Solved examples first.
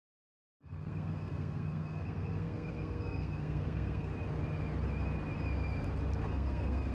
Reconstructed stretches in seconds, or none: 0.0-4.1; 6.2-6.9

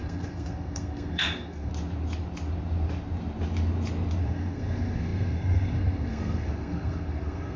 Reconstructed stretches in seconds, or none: 0.0-1.7; 4.2-7.6

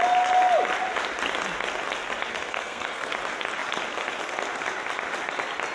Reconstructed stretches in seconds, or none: 2.3-3.1

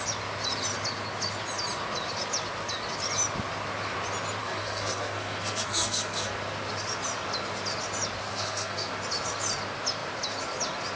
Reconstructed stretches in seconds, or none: 4.4-6.3; 8.2-8.9

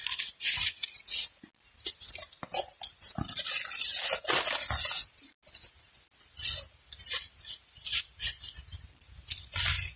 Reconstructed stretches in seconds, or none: none